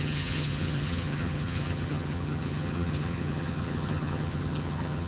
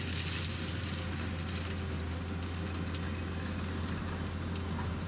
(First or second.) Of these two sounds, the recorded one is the second